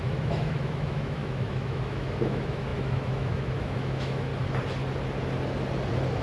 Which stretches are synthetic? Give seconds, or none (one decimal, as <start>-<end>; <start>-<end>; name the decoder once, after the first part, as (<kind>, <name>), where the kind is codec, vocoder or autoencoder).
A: 0.0-4.3 (autoencoder, DAC-VAE)